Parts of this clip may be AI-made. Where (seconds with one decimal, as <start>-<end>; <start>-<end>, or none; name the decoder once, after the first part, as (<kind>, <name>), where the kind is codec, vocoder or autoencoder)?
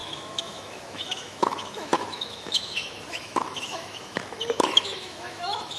0.0-5.8 (autoencoder, DAC-VAE)